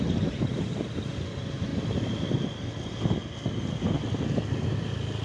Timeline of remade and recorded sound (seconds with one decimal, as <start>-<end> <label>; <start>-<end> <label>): 0.0-5.2 recorded